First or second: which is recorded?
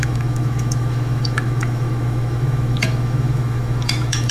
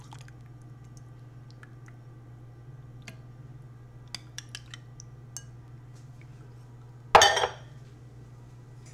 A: second